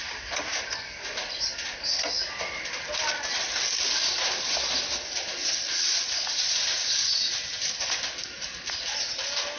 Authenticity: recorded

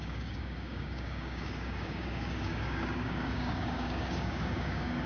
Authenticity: remade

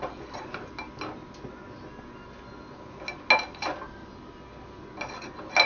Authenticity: recorded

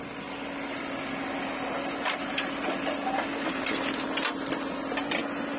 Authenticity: recorded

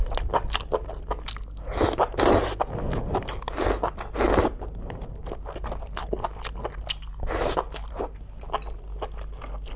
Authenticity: recorded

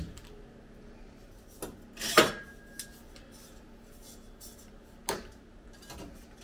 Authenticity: recorded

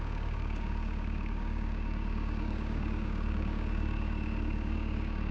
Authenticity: remade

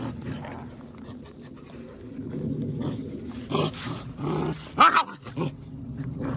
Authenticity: recorded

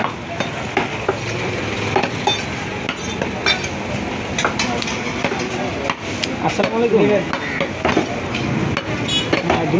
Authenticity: recorded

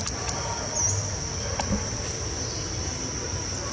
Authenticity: recorded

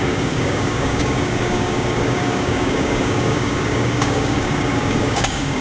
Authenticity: remade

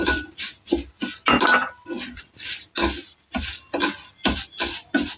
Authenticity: recorded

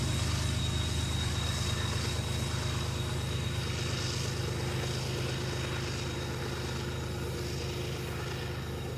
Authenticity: recorded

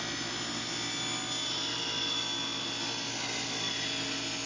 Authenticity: recorded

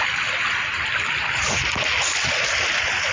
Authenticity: recorded